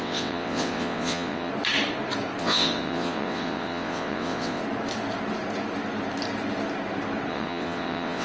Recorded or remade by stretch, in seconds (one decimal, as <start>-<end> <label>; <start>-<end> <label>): 0.0-1.5 remade; 1.5-2.4 recorded; 2.4-4.6 remade; 4.6-7.3 recorded; 7.3-8.2 remade